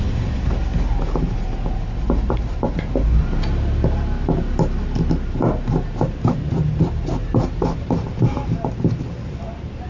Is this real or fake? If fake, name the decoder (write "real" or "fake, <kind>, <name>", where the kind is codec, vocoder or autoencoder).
real